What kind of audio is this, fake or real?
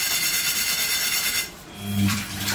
fake